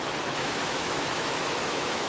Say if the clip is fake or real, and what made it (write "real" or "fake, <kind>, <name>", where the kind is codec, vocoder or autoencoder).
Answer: fake, autoencoder, DAC-VAE